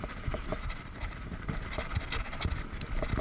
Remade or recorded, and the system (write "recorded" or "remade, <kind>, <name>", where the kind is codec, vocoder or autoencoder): remade, vocoder, BigVGAN v2